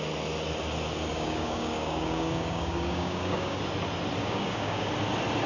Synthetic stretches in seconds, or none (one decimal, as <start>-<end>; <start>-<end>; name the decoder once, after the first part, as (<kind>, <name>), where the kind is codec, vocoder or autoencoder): 1.1-3.6 (codec, DAC); 4.2-4.9

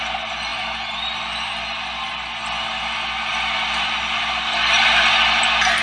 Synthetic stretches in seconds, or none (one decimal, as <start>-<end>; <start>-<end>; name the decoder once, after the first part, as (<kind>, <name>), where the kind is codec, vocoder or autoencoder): none

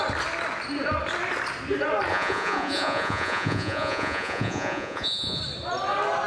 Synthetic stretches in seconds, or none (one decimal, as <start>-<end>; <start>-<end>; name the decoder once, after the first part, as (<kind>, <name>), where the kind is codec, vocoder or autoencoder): 2.1-5.4 (vocoder, Vocos)

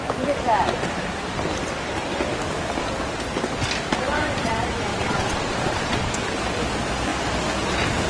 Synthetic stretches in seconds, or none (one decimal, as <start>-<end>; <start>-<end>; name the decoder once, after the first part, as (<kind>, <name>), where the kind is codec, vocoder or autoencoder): 4.9-6.1 (vocoder, Vocos)